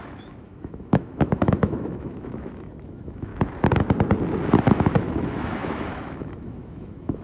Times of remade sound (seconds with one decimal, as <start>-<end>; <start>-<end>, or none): 0.0-3.3; 4.6-7.2